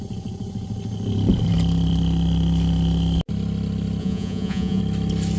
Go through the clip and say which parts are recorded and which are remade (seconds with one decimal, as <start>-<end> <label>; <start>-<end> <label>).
0.0-4.0 recorded; 4.0-4.8 remade; 4.8-5.4 recorded